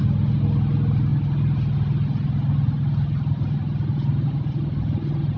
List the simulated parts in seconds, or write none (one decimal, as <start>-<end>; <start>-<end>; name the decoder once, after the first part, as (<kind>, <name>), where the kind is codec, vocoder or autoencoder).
none